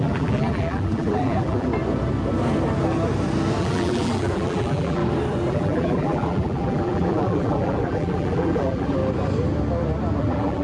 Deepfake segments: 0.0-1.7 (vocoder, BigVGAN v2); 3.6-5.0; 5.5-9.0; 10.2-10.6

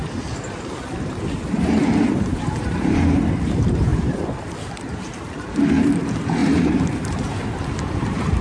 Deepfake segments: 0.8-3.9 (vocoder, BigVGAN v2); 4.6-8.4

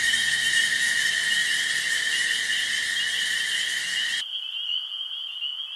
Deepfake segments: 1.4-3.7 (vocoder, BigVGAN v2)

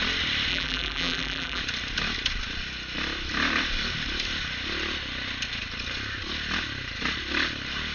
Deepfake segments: 0.5-1.6 (vocoder, BigVGAN v2)